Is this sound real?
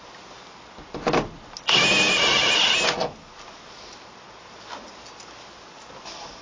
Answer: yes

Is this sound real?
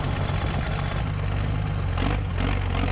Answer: yes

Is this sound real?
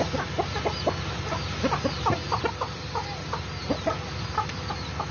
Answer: yes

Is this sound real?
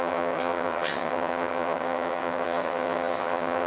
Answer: no